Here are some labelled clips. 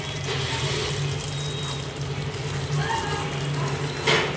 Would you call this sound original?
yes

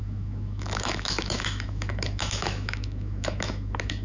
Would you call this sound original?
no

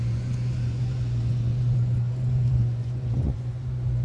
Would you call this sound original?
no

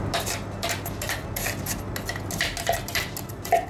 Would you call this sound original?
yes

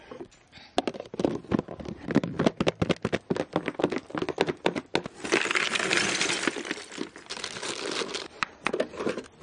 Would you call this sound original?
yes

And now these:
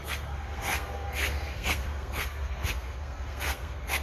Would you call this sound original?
no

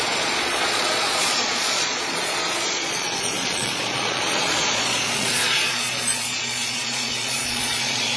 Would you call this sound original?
no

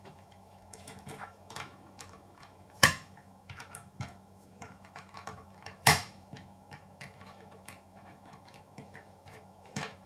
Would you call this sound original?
no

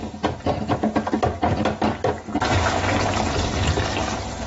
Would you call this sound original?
yes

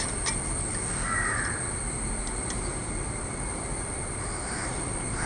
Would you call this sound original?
yes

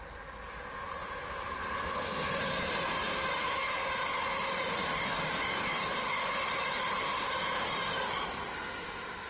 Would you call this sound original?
yes